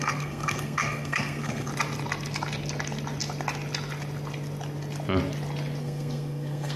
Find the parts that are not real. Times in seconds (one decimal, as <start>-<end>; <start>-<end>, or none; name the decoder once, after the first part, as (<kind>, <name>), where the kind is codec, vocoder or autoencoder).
0.0-1.7 (codec, SNAC); 5.8-6.8